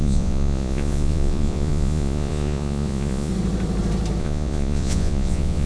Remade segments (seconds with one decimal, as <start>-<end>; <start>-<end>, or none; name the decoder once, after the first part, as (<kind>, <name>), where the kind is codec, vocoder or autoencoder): 0.0-3.3 (vocoder, Vocos); 4.2-5.7